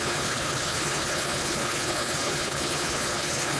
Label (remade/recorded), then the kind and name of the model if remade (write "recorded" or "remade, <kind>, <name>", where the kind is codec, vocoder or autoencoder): remade, codec, HILCodec